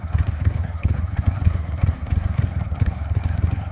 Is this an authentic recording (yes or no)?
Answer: no